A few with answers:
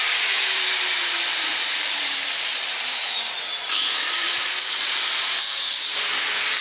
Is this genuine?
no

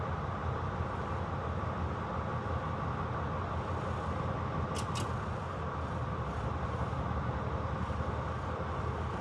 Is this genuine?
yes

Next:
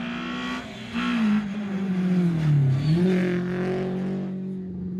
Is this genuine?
yes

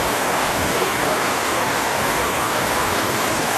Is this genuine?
no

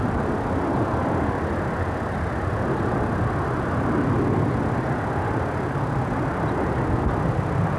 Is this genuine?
yes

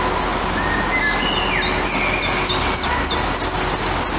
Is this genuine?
yes